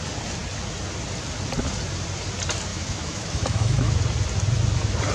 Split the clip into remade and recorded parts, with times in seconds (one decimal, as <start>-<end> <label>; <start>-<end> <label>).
0.0-2.7 recorded; 2.7-4.0 remade; 4.0-5.1 recorded